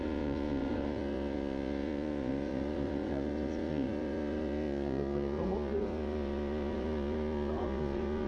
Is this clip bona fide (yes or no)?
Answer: no